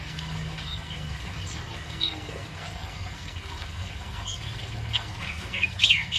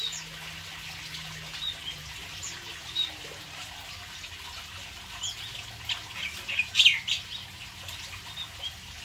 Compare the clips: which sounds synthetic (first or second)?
first